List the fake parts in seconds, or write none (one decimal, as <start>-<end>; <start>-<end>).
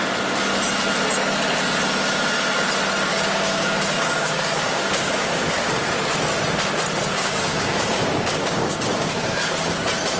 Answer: 3.1-5.7; 7.1-9.5